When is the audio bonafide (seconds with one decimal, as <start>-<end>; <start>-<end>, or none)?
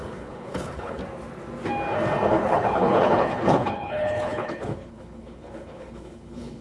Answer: 1.0-2.3